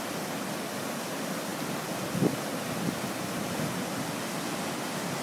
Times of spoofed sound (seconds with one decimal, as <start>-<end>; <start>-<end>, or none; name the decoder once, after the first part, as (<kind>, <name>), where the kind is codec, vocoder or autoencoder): none